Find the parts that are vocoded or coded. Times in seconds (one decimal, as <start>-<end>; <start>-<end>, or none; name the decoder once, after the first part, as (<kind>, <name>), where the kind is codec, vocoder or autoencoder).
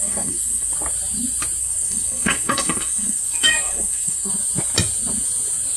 0.0-0.7 (codec, SNAC); 1.6-4.3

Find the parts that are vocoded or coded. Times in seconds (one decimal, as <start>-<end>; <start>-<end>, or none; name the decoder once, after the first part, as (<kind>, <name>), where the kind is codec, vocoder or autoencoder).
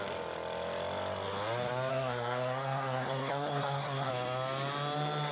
1.9-4.1 (codec, SNAC)